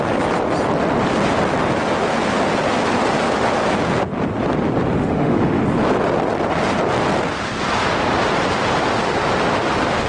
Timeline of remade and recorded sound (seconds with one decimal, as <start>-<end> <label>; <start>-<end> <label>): 0.0-5.0 recorded; 5.0-5.6 remade; 5.6-10.1 recorded